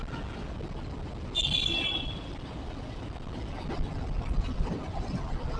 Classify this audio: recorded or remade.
recorded